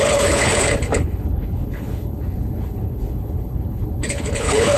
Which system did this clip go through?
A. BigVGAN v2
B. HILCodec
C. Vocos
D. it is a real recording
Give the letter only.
B